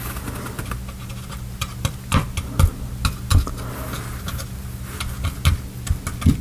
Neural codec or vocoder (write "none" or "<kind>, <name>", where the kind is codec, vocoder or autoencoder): none